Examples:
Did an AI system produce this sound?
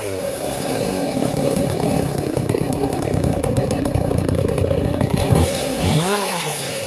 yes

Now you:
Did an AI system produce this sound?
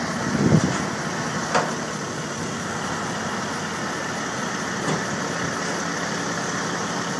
no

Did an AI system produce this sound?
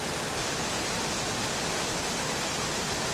no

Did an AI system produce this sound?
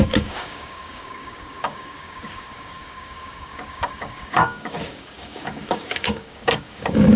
yes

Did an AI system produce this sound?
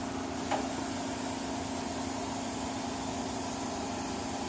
yes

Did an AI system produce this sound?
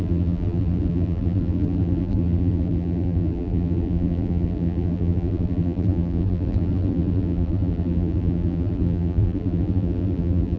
yes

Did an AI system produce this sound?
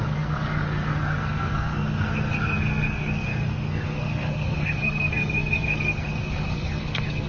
yes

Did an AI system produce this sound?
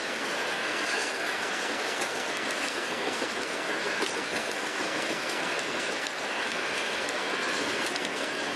yes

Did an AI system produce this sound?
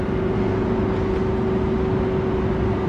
no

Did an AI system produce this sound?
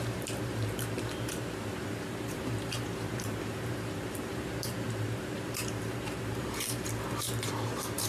yes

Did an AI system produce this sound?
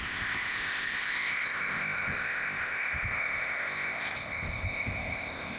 yes